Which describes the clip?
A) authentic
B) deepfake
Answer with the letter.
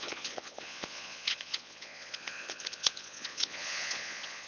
B